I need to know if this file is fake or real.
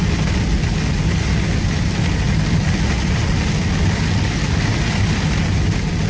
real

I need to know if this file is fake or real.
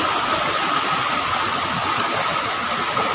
real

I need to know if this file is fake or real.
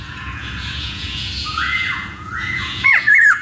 fake